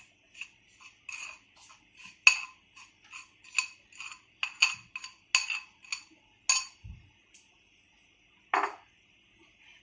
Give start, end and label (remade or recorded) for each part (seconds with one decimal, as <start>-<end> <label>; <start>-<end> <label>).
0.0-9.8 recorded